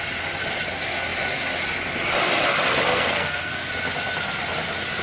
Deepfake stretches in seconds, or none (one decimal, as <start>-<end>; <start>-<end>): 2.9-3.7